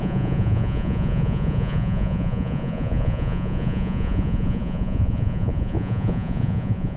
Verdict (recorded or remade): remade